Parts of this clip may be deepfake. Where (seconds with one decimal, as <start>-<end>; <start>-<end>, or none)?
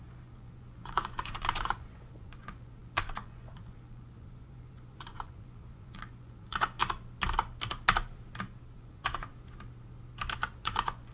0.0-6.8; 8.8-9.3; 10.6-11.1